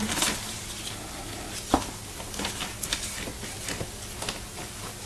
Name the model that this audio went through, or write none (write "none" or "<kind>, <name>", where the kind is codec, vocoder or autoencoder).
none